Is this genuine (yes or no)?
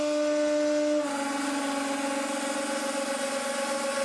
yes